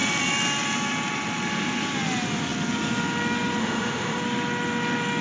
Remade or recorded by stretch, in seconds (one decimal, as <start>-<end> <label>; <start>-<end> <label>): 0.0-3.6 recorded; 3.6-4.2 remade; 4.2-5.2 recorded